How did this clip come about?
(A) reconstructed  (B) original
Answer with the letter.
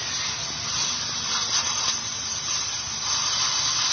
B